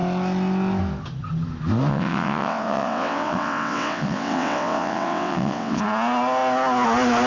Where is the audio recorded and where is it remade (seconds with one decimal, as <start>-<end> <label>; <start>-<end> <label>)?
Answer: 0.0-1.9 recorded; 1.9-5.8 remade; 5.8-7.3 recorded